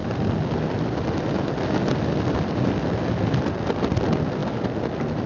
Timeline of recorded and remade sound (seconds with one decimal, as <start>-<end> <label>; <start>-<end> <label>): 0.0-5.3 recorded